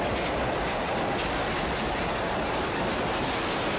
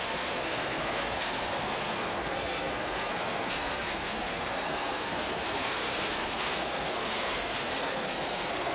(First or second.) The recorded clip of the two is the first